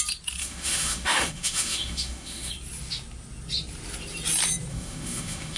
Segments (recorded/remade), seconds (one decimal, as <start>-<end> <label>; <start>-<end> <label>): 0.0-0.4 recorded; 0.4-2.5 remade; 2.5-4.7 recorded; 4.7-5.6 remade